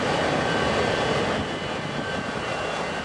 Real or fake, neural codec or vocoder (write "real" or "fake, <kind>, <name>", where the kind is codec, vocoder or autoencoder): real